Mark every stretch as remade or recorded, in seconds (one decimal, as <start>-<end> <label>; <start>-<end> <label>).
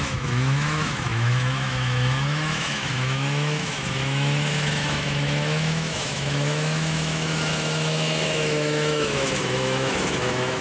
0.0-10.6 remade